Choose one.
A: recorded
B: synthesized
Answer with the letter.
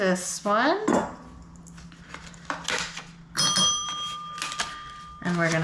A